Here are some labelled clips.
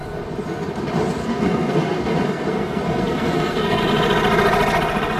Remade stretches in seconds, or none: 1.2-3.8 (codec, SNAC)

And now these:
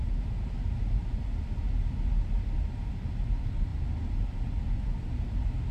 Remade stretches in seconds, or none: none

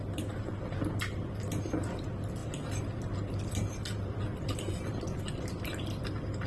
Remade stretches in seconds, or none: none